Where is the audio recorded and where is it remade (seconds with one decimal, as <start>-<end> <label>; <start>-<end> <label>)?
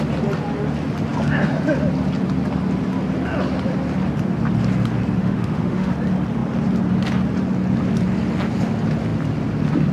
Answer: 0.0-5.2 recorded; 5.2-5.9 remade; 5.9-9.9 recorded